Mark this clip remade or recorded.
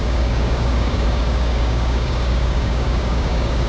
remade